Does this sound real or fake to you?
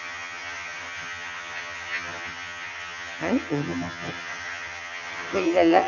fake